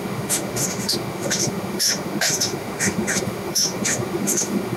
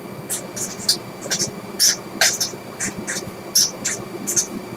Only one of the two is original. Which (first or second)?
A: second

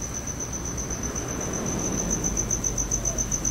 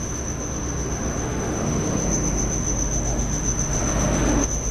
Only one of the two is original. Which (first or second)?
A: first